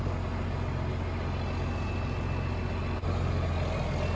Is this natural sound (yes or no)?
yes